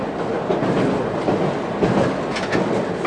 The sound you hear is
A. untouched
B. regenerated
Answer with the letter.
A